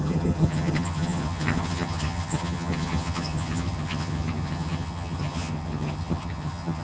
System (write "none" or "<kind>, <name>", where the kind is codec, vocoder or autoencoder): vocoder, HiFi-GAN